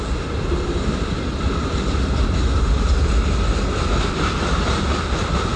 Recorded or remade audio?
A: recorded